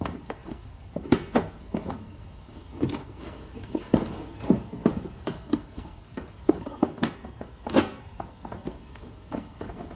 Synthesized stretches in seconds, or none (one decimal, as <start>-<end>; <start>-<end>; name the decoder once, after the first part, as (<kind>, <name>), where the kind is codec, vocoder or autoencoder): 0.0-10.0 (codec, SNAC)